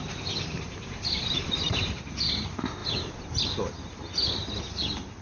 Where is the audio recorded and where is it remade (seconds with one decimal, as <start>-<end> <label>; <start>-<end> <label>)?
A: 0.0-1.8 remade; 1.8-2.8 recorded; 2.8-3.4 remade; 3.4-5.2 recorded